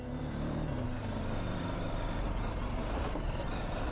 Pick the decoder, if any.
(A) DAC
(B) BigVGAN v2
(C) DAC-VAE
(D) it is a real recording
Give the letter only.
B